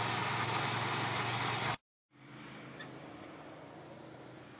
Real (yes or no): yes